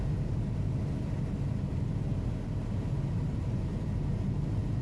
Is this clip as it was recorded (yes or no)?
yes